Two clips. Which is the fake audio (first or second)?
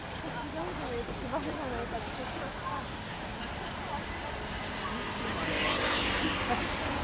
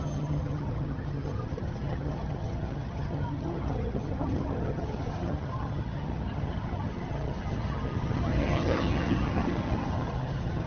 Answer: second